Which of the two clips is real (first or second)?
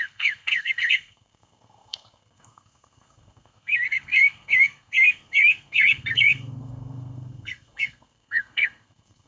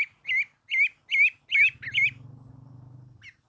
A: second